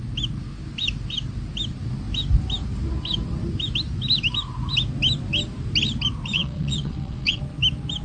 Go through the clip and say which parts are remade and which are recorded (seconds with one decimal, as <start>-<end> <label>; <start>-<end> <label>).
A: 0.0-6.3 recorded; 6.3-7.4 remade; 7.4-8.0 recorded